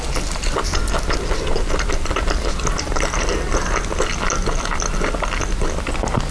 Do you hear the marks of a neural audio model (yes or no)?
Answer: no